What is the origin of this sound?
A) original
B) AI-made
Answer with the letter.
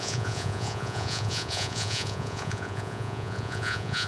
B